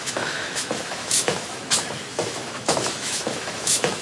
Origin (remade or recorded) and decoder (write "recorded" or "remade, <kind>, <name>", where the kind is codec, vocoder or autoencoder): remade, autoencoder, DAC-VAE